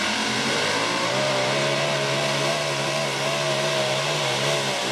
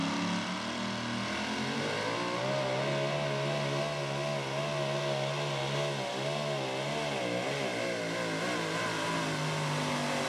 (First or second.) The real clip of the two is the second